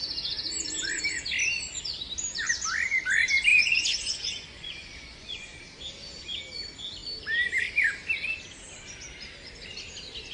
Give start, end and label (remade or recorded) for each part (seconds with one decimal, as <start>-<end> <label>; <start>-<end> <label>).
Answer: 0.0-3.5 recorded; 3.5-5.6 remade; 5.6-10.3 recorded